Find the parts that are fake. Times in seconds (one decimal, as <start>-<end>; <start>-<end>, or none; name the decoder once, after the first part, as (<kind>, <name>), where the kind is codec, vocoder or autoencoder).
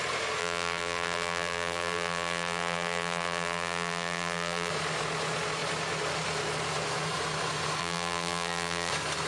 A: 0.4-4.7 (vocoder, BigVGAN v2); 7.8-8.9